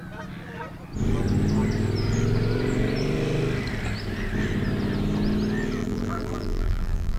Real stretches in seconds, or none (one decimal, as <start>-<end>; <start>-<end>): 0.0-5.8